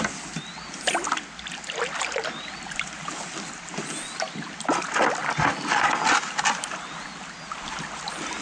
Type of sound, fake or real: real